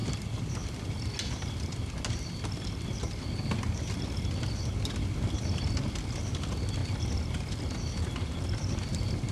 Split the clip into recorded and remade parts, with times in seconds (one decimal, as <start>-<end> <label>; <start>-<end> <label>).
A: 0.0-9.3 recorded